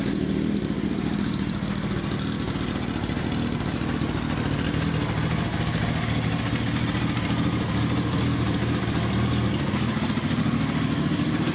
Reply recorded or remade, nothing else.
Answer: recorded